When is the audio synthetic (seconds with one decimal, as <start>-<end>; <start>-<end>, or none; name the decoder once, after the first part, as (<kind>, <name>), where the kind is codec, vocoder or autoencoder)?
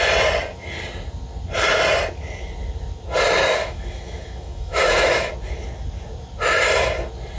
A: 3.6-5.3 (autoencoder, DAC-VAE)